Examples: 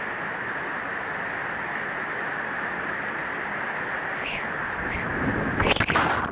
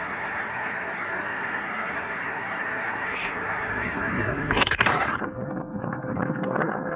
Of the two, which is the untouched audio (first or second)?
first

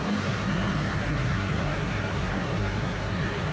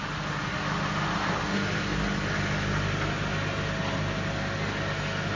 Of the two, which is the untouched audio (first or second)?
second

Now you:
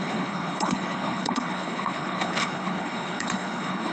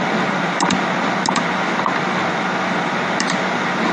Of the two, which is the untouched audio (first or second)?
second